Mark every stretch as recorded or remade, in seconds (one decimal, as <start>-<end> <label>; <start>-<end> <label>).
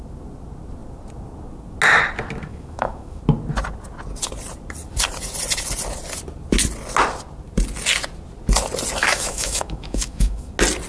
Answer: 0.0-2.5 recorded; 2.5-3.2 remade; 3.2-9.0 recorded; 9.0-10.5 remade; 10.5-10.9 recorded